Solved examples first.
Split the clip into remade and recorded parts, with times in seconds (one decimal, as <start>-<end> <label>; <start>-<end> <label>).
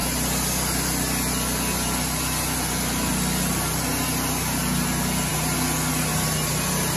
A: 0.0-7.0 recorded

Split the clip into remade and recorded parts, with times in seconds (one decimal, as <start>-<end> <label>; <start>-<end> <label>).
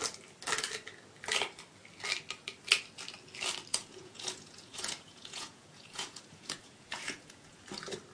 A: 0.0-3.7 recorded; 3.7-7.6 remade; 7.6-8.1 recorded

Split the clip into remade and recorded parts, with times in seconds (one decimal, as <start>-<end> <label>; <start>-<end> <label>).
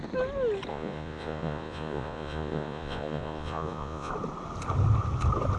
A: 0.0-0.7 recorded; 0.7-4.1 remade; 4.1-5.6 recorded